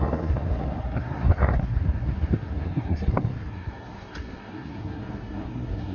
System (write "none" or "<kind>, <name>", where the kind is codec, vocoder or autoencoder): codec, SNAC